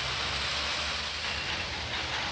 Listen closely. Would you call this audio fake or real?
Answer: real